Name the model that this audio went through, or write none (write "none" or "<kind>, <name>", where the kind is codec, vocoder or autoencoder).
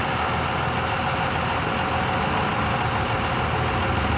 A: none